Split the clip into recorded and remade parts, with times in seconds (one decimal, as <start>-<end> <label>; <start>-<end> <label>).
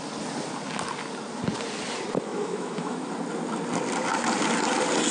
0.0-2.3 recorded; 2.3-3.1 remade; 3.1-5.1 recorded